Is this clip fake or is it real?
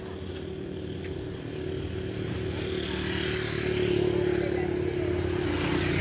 real